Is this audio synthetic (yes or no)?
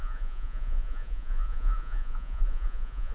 yes